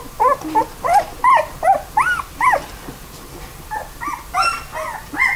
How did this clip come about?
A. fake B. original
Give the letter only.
B